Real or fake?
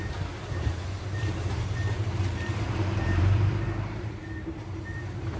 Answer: fake